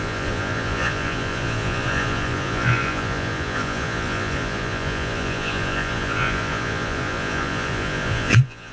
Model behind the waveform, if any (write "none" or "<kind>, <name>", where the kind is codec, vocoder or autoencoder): vocoder, Vocos